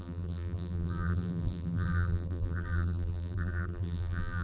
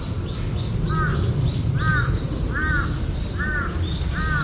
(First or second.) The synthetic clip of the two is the first